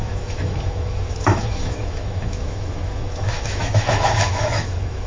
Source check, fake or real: fake